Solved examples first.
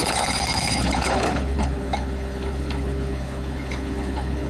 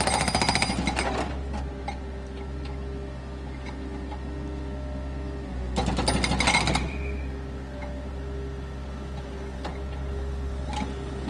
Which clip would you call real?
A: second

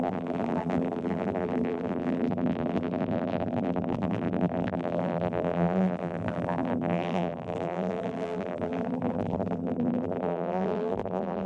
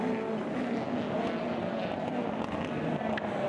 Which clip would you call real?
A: second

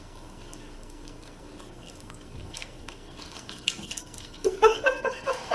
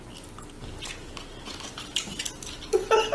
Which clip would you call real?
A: second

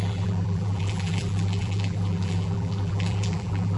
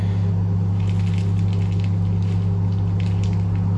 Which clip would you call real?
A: second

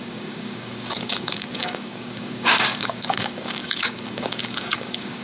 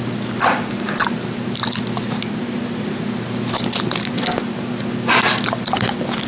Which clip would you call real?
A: second